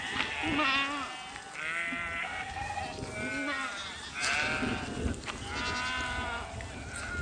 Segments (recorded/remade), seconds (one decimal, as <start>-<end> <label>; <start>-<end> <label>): 0.0-2.2 recorded; 2.2-2.8 remade; 2.8-7.2 recorded